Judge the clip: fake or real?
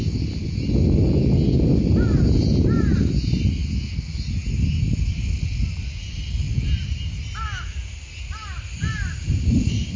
real